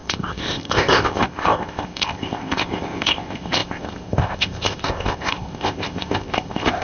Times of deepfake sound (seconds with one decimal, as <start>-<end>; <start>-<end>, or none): 0.0-6.8

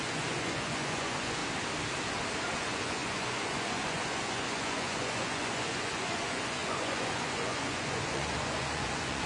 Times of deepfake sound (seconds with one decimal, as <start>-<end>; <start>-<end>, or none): 0.0-1.4; 2.6-9.3

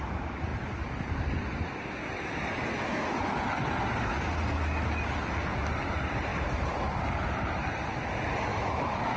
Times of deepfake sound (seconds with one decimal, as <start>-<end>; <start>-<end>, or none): 8.5-9.2

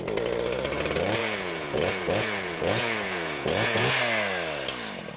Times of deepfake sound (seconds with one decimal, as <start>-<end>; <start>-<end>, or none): 1.2-4.0

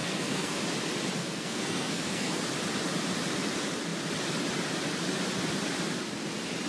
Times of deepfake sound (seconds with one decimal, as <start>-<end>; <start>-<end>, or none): 0.0-0.6; 1.2-2.4

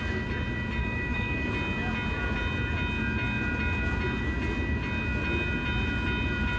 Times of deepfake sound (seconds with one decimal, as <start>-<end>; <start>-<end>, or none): 0.8-1.5